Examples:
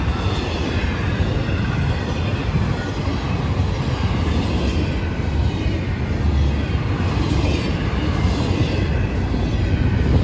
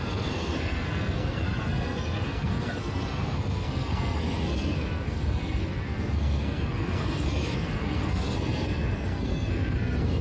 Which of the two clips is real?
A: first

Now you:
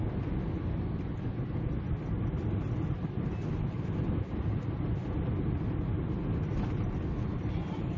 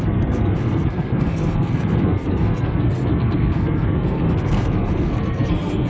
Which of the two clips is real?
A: first